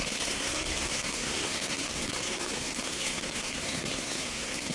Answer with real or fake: fake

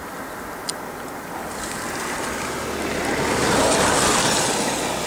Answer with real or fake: real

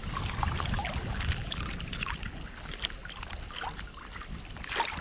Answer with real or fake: real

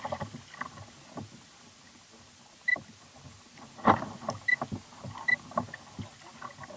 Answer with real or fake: real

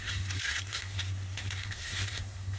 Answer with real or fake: fake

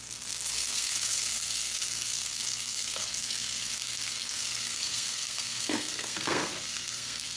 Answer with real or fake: fake